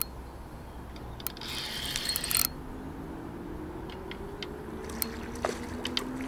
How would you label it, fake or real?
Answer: real